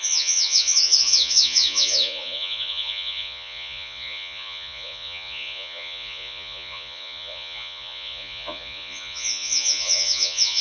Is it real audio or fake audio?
fake